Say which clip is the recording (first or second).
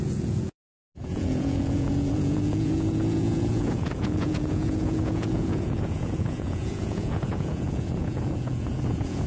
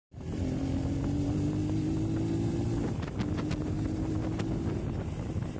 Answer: second